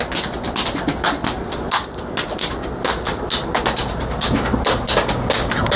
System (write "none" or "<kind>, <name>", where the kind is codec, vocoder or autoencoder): none